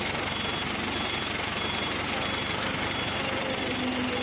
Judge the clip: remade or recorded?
recorded